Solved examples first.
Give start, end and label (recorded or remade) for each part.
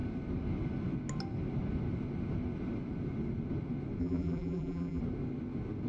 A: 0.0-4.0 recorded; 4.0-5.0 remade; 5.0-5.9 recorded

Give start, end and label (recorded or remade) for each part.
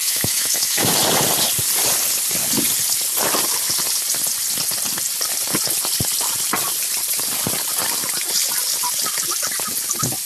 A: 0.0-0.9 remade; 0.9-10.3 recorded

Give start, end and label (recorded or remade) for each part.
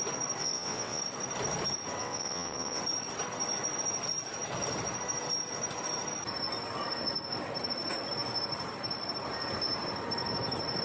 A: 0.0-0.4 recorded; 0.4-1.0 remade; 1.0-2.0 recorded; 2.0-2.8 remade; 2.8-10.8 recorded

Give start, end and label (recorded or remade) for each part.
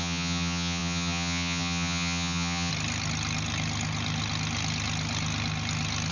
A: 0.0-2.7 remade; 2.7-6.1 recorded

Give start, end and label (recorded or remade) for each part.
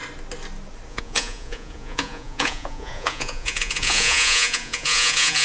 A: 0.0-0.9 recorded; 0.9-5.4 remade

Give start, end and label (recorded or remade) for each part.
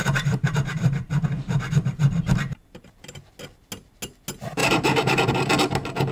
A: 0.0-2.9 remade; 2.9-4.6 recorded; 4.6-5.3 remade; 5.3-6.1 recorded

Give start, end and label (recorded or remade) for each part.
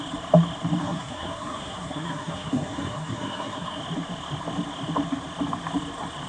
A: 0.0-0.8 recorded; 0.8-3.8 remade; 3.8-6.3 recorded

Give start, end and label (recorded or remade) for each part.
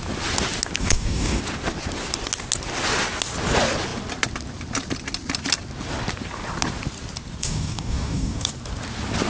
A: 0.0-0.8 recorded; 0.8-1.4 remade; 1.4-7.4 recorded; 7.4-8.5 remade; 8.5-9.3 recorded